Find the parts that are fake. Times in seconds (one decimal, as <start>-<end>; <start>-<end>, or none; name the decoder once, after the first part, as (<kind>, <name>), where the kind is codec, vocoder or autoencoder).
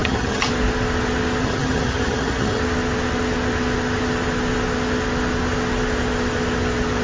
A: 0.0-0.5 (vocoder, HiFi-GAN); 1.4-2.6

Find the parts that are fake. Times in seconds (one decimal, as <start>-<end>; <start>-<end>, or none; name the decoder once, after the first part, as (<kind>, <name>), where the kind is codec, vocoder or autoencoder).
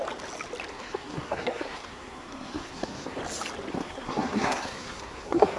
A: 0.7-3.2 (codec, SNAC); 3.7-5.6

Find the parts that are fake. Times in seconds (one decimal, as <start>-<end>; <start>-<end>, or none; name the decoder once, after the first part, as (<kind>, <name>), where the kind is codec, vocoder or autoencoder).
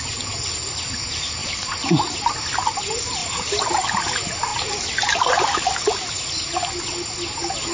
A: 1.4-2.3 (vocoder, BigVGAN v2); 3.2-4.0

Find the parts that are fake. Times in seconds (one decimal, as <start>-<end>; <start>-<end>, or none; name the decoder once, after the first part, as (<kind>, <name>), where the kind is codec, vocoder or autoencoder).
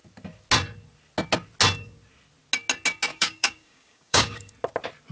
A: 3.1-4.5 (codec, DAC)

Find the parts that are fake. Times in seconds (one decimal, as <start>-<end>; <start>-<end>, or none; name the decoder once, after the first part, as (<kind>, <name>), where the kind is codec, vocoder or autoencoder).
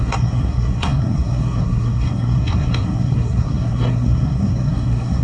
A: 0.0-5.2 (codec, SNAC)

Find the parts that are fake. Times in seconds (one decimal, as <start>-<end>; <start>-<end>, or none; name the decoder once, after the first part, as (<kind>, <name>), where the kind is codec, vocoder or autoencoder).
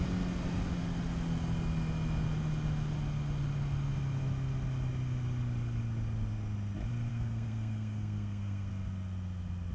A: 7.1-8.7 (codec, SNAC)